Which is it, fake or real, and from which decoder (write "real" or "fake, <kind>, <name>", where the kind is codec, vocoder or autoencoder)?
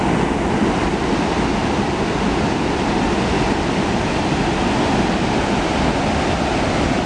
real